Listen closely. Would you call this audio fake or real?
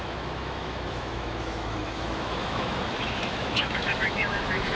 fake